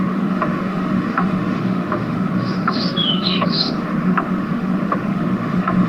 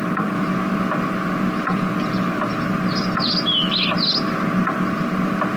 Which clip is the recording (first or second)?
second